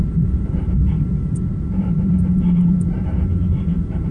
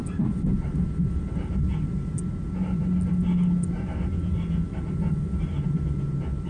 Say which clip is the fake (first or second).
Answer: first